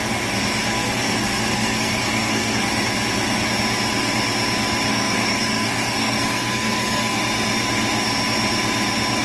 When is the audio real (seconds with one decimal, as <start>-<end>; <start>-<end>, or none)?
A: 0.0-0.6; 2.6-4.9; 7.2-9.2